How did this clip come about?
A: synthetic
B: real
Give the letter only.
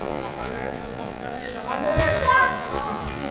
A